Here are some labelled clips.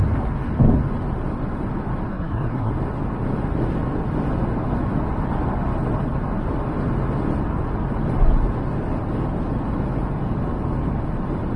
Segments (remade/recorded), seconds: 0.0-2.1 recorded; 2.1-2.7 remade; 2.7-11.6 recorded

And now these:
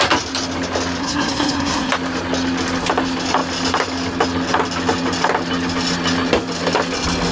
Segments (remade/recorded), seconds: 0.0-1.0 recorded; 1.0-1.9 remade; 1.9-7.3 recorded

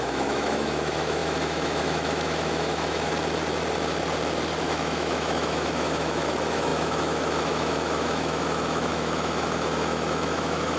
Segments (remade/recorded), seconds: 0.0-3.1 remade; 3.1-4.6 recorded; 4.6-10.8 remade

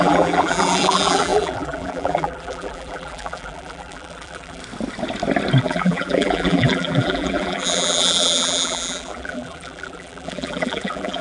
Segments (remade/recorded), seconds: 0.0-4.6 remade; 4.6-5.6 recorded; 5.6-11.2 remade

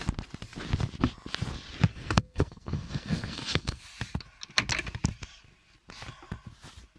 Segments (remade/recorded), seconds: 0.0-1.9 recorded; 1.9-3.8 remade; 3.8-7.0 recorded